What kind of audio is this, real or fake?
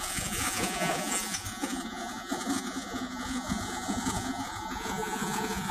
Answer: fake